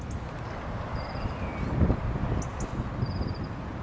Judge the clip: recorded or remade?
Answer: recorded